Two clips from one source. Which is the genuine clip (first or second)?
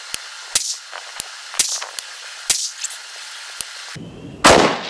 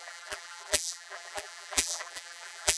first